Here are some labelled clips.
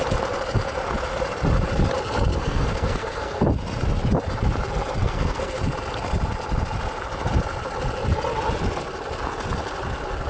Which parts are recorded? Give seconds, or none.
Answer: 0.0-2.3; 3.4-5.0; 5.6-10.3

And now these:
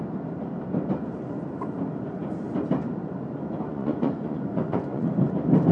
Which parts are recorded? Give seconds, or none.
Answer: 0.0-3.7; 5.3-5.7

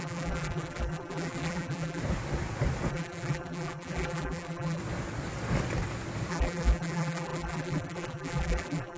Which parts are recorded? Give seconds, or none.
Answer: 2.0-2.9; 4.8-6.3

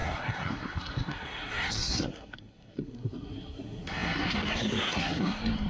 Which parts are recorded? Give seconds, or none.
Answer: none

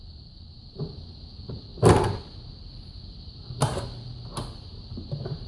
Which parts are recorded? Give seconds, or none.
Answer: 1.7-5.0